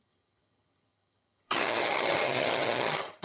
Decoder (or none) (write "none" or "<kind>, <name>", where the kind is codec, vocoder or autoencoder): vocoder, HiFi-GAN